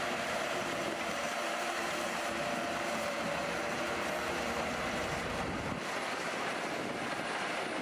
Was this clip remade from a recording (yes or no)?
yes